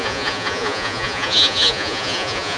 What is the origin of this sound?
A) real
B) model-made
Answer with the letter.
B